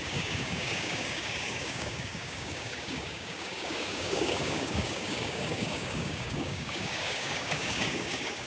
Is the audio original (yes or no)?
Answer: no